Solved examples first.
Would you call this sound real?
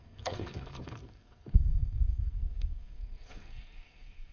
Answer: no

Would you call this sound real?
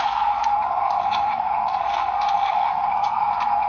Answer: no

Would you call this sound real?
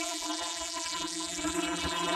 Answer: no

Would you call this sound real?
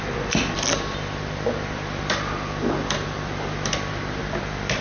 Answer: yes